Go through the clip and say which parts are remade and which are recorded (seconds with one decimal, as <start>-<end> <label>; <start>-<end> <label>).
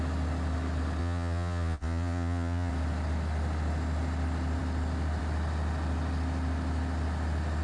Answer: 0.0-1.0 recorded; 1.0-2.7 remade; 2.7-7.6 recorded